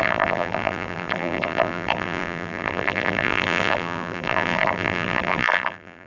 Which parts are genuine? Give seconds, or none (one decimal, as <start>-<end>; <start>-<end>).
none